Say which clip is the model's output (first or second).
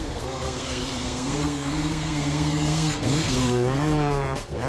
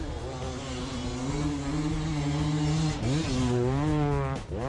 first